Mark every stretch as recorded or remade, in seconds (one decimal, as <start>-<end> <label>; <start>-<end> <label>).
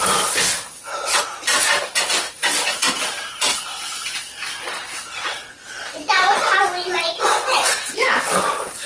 0.0-0.9 recorded; 0.9-1.6 remade; 1.6-4.7 recorded; 4.7-6.6 remade; 6.6-7.0 recorded; 7.0-8.4 remade; 8.4-8.9 recorded